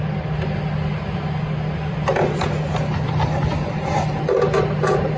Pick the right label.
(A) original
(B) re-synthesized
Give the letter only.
A